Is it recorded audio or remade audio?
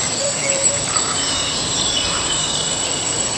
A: recorded